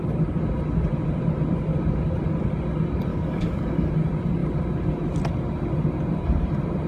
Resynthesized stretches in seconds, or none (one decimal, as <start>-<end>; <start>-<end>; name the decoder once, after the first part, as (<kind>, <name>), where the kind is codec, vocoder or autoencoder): 3.1-3.9 (codec, DAC)